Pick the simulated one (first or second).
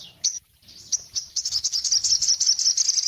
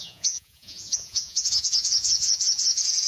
second